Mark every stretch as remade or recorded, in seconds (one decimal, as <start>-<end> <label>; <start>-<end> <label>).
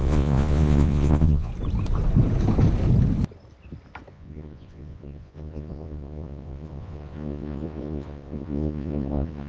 0.0-1.5 remade; 1.5-4.1 recorded; 4.1-9.5 remade